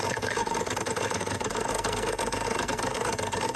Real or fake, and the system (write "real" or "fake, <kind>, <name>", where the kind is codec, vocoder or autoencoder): fake, codec, SNAC